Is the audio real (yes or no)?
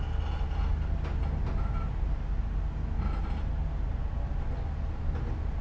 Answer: yes